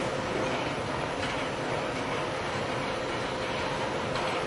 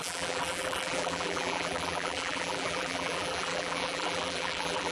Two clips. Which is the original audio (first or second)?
first